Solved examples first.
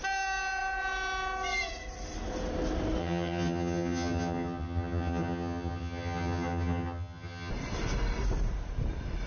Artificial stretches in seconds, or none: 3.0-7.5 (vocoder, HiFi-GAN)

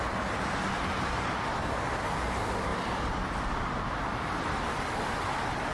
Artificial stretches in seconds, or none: 0.6-1.4 (vocoder, BigVGAN v2)

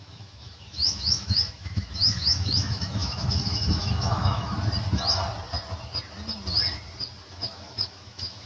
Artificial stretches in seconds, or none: 0.0-4.5 (autoencoder, DAC-VAE); 7.3-8.5

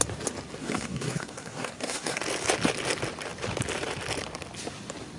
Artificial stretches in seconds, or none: 0.6-2.2 (codec, SNAC)

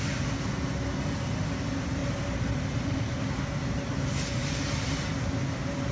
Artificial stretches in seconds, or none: 2.0-3.4 (vocoder, BigVGAN v2); 4.4-5.1

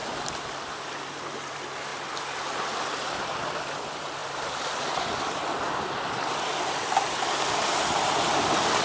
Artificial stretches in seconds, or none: 0.0-1.9 (vocoder, BigVGAN v2); 3.0-8.8

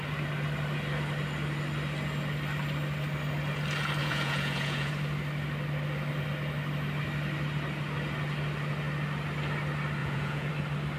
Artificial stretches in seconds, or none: 4.0-4.9 (vocoder, Vocos); 10.0-10.5